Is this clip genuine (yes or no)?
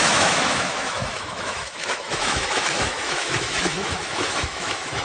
no